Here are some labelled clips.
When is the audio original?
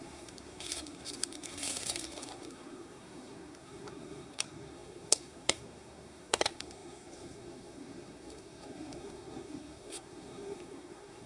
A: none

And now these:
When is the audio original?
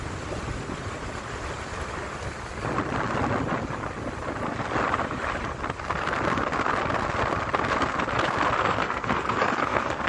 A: 0.0-8.6